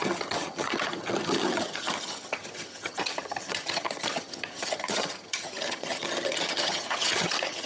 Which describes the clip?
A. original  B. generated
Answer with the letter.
B